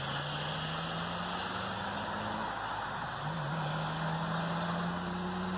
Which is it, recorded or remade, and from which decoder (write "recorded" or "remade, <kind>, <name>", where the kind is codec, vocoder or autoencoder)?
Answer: recorded